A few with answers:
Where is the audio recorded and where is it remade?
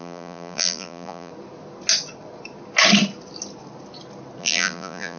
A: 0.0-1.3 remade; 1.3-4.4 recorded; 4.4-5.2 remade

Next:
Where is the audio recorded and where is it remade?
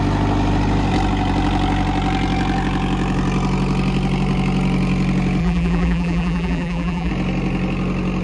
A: 0.0-5.4 recorded; 5.4-7.1 remade; 7.1-8.2 recorded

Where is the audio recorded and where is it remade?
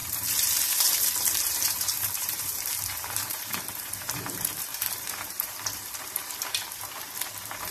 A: 0.0-7.7 remade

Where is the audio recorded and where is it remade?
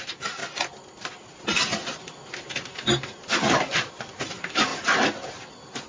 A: 0.0-0.4 remade; 0.4-3.9 recorded; 3.9-4.7 remade; 4.7-5.9 recorded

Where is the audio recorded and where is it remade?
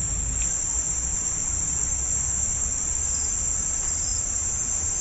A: 0.0-1.1 recorded; 1.1-1.8 remade; 1.8-4.1 recorded; 4.1-5.0 remade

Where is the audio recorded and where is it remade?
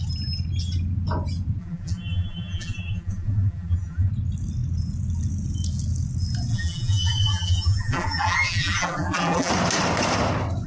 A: 0.0-1.6 recorded; 1.6-4.1 remade; 4.1-6.5 recorded; 6.5-9.5 remade; 9.5-10.7 recorded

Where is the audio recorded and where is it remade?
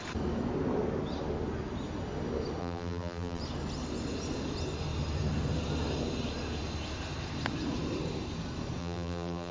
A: 0.0-2.6 recorded; 2.6-3.4 remade; 3.4-8.8 recorded; 8.8-9.5 remade